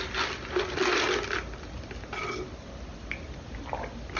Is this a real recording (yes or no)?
yes